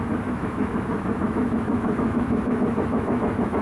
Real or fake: fake